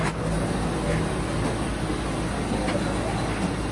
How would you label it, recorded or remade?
recorded